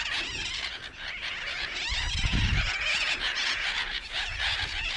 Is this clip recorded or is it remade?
remade